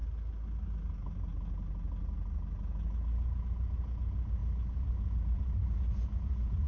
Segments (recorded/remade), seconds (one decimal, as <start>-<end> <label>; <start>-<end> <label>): 0.0-4.4 recorded; 4.4-6.7 remade